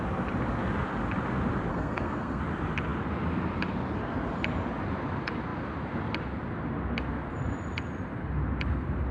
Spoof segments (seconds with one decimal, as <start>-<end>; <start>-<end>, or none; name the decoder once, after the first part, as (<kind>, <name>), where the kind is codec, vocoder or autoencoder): 1.7-2.4 (codec, SNAC)